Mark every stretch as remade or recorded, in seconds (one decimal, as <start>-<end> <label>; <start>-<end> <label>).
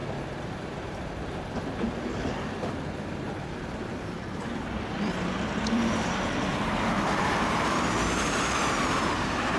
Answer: 0.0-9.6 remade